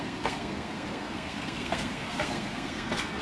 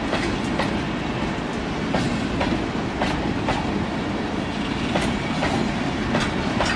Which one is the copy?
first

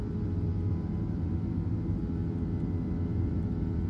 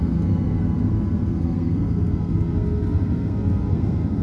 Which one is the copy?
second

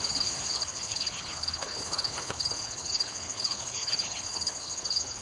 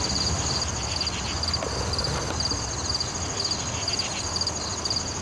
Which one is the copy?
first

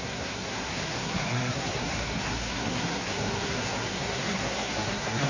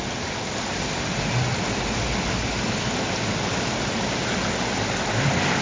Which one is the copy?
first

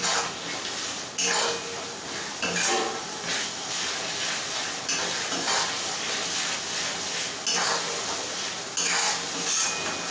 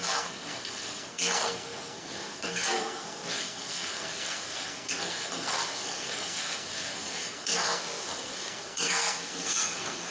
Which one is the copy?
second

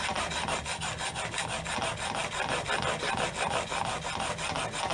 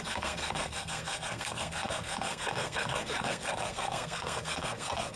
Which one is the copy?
second